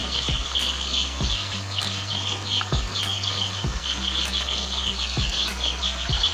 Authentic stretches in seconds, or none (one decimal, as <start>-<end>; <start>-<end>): none